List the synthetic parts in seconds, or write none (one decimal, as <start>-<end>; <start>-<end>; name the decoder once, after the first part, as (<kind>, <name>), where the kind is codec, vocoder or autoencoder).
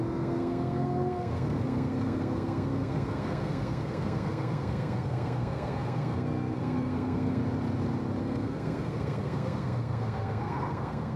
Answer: 0.0-7.4 (codec, SNAC); 8.2-11.2